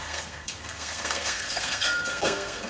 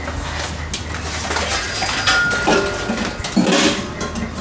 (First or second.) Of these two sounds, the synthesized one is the first